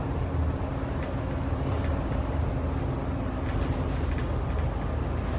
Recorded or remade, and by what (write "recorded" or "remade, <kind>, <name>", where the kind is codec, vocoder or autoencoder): recorded